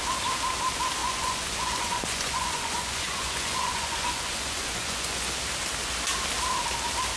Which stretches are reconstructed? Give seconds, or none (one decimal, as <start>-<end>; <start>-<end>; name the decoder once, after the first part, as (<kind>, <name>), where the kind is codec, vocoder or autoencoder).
1.0-5.3 (vocoder, Vocos)